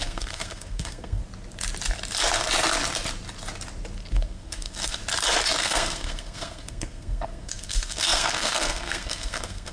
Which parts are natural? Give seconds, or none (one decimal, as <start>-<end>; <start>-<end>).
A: 1.2-4.1; 5.0-5.6